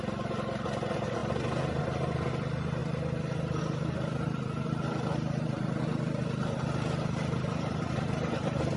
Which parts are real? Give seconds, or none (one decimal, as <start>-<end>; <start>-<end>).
0.0-8.8

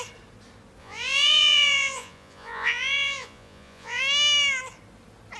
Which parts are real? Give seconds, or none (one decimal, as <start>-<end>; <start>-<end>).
0.0-0.8; 4.0-5.4

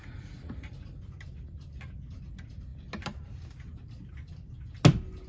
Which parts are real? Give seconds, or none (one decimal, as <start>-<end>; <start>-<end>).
1.0-5.3

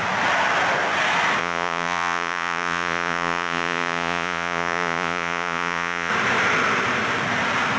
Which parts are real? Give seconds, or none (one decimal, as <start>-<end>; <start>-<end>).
0.0-1.4; 6.1-7.8